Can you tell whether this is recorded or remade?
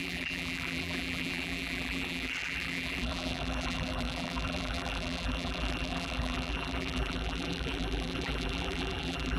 remade